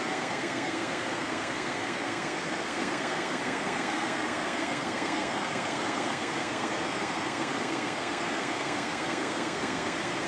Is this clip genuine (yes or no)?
no